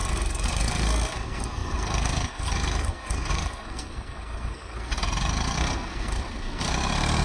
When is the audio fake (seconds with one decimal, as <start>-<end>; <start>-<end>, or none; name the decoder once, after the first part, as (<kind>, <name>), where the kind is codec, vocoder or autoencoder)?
0.0-7.2 (codec, SNAC)